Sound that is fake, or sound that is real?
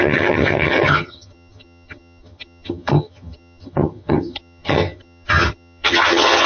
fake